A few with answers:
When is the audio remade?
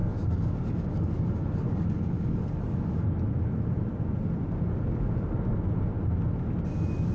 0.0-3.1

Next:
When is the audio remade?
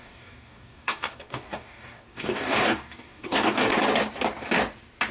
0.0-3.7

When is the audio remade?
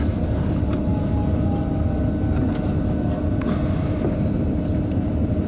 none